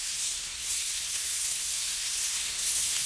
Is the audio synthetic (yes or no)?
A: yes